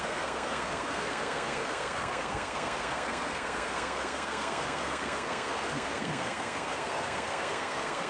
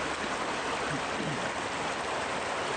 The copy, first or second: first